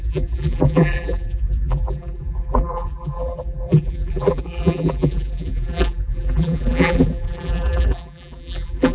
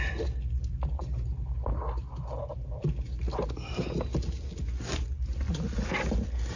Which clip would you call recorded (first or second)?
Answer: second